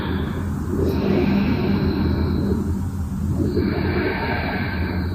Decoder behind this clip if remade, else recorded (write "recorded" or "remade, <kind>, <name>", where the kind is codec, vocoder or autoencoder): recorded